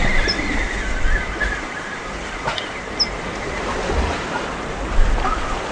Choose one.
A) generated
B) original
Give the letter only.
B